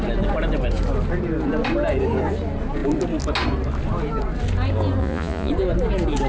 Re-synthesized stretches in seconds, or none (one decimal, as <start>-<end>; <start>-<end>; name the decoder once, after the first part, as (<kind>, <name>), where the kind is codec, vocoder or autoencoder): 5.0-5.5 (vocoder, Vocos)